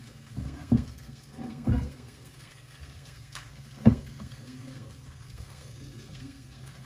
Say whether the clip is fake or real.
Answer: fake